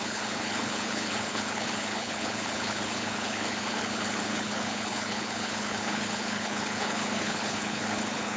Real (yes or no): no